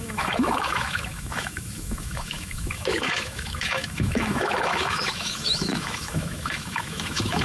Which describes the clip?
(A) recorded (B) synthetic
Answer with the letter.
B